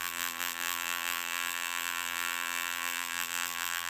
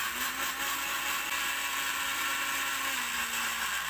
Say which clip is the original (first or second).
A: second